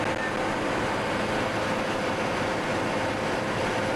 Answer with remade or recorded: recorded